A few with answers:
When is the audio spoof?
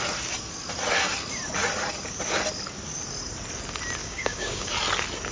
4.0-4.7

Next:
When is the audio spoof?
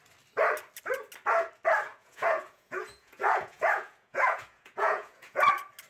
1.9-5.4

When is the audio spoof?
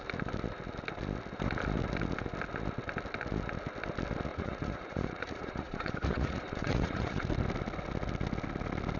4.3-7.3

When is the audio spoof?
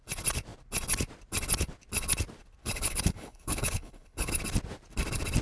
2.6-4.3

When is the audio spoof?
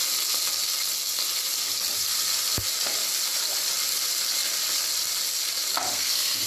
5.9-6.5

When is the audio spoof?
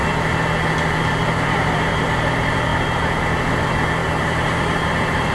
1.0-2.7; 3.5-5.3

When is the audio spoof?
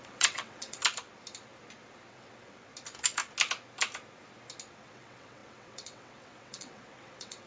0.0-0.8; 2.1-2.7; 4.7-7.5